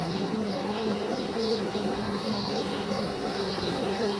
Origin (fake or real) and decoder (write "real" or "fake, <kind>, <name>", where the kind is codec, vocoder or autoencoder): fake, codec, SNAC